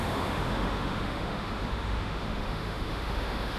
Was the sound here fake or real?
fake